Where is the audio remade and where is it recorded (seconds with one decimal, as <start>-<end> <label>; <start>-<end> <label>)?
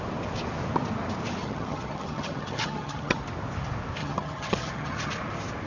0.0-1.4 recorded; 1.4-3.2 remade; 3.2-4.0 recorded; 4.0-5.1 remade; 5.1-5.7 recorded